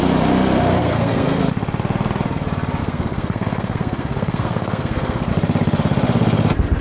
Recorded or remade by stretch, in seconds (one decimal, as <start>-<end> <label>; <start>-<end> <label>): 0.0-0.8 recorded; 0.8-1.4 remade; 1.4-2.8 recorded; 2.8-5.3 remade; 5.3-6.8 recorded